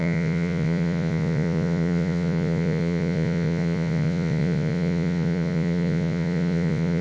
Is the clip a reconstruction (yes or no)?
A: yes